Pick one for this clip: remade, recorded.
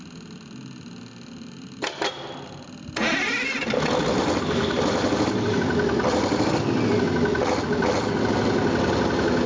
recorded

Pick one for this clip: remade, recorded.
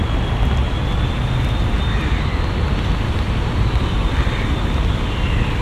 recorded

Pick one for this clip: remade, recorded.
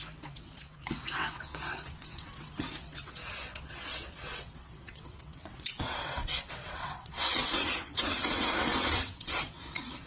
remade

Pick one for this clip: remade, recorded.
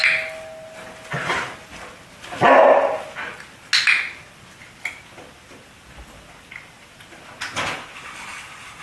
recorded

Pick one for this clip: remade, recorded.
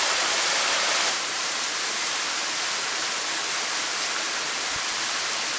recorded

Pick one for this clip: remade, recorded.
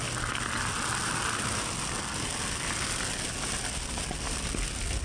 recorded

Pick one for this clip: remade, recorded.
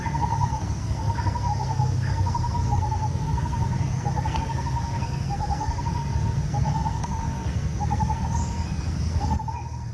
remade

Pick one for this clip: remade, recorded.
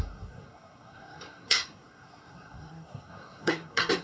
remade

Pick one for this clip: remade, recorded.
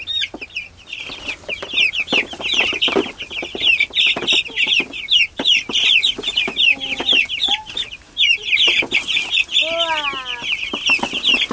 recorded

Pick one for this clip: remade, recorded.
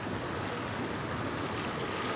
recorded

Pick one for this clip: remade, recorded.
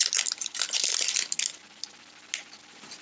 recorded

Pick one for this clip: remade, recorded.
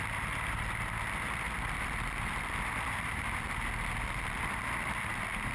remade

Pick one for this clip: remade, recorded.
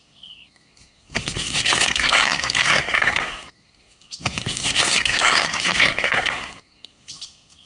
remade